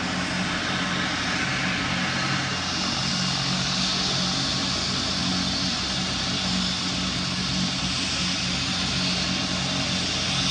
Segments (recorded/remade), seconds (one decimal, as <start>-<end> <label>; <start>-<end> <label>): 0.0-10.5 recorded